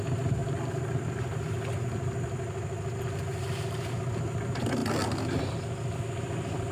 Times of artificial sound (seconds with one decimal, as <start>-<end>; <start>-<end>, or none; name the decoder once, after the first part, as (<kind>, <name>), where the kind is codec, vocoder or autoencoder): none